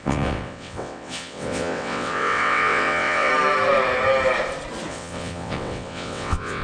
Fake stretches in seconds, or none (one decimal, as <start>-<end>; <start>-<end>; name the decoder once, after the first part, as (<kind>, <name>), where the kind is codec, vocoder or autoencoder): 0.0-3.3 (vocoder, WaveNeXt); 4.9-6.6